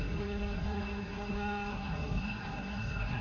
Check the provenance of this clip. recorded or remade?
remade